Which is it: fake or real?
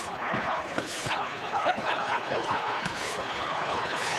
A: fake